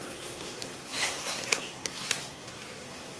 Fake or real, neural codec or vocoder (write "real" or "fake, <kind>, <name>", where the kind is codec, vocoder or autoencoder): fake, codec, SNAC